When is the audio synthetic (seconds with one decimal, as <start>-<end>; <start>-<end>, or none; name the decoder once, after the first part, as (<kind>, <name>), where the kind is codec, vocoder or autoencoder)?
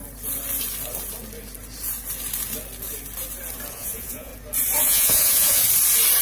3.7-4.3 (vocoder, Vocos); 4.8-5.6